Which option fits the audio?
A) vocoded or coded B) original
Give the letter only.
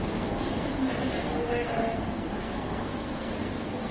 A